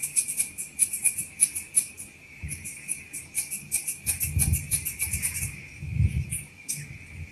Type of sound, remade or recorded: remade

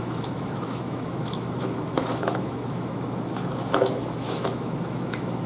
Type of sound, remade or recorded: remade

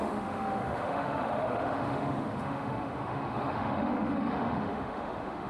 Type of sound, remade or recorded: remade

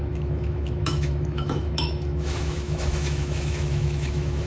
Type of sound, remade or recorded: remade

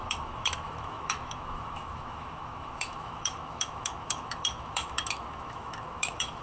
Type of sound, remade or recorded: remade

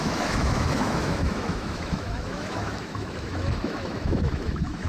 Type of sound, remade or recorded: remade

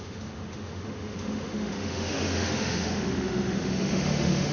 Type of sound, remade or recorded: remade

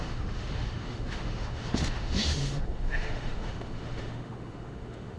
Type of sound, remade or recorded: remade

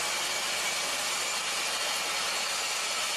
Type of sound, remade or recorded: recorded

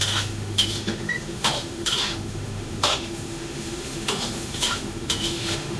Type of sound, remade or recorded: remade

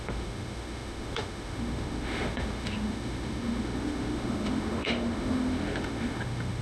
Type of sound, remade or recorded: remade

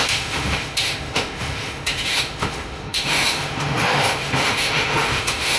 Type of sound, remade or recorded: remade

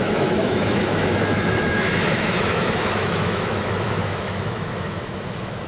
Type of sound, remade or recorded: remade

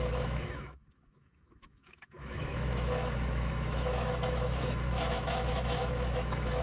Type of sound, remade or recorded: remade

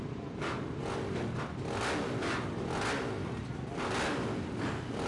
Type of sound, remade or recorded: recorded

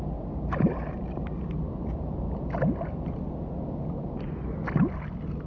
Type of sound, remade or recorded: recorded